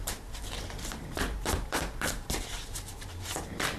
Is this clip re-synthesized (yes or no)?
yes